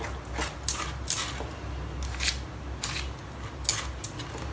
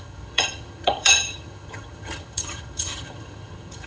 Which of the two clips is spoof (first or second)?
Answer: second